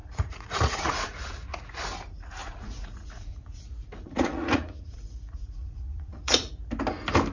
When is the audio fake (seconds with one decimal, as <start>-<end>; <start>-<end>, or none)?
0.0-1.8; 2.4-6.5